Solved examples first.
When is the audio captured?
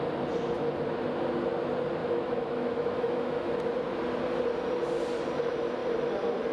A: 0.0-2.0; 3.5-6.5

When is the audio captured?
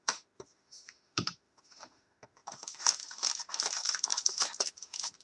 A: none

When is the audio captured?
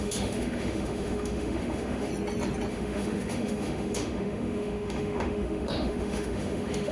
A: 2.1-2.7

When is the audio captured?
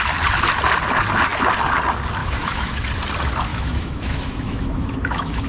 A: 0.0-2.2; 2.8-3.5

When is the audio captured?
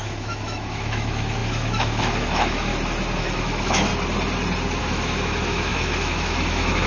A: 2.7-3.2; 3.9-4.8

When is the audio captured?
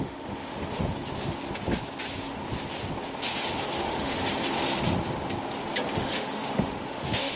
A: 0.6-3.8; 4.2-5.9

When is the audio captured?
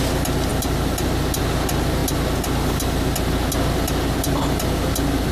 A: 0.0-5.3